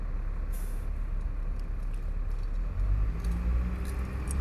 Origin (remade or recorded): recorded